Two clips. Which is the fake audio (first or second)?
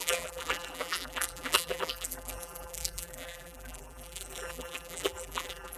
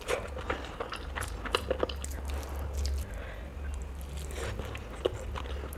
first